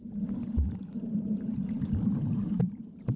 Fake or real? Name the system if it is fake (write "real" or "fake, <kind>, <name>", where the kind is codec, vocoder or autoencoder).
fake, vocoder, BigVGAN v2